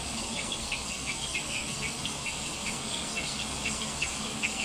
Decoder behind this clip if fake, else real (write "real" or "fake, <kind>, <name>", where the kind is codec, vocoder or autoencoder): fake, codec, SNAC